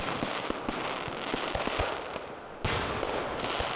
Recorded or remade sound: recorded